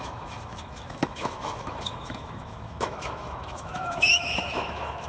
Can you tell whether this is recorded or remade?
remade